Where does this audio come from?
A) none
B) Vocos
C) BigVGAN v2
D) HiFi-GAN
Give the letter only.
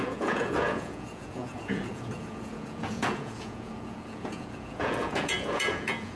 B